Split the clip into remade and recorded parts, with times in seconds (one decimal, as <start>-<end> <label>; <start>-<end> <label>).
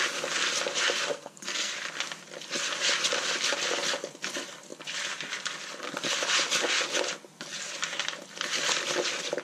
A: 0.0-1.1 recorded; 1.1-1.7 remade; 1.7-9.4 recorded